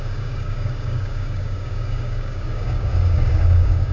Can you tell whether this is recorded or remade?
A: remade